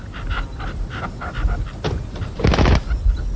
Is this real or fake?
real